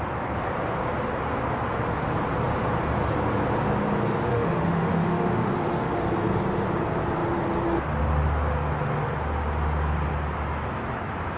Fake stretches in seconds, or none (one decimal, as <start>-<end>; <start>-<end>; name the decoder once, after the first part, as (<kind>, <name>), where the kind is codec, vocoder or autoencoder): 4.3-6.0 (autoencoder, DAC-VAE)